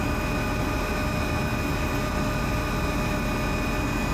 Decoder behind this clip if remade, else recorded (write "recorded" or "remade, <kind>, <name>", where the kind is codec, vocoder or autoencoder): recorded